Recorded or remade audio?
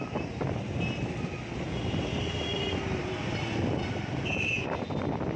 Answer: recorded